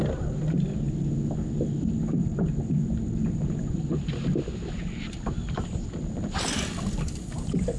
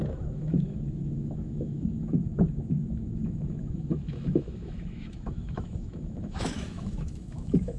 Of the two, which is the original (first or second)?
first